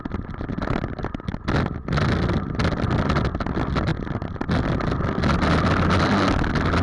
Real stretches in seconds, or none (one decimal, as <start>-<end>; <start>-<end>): 0.0-6.8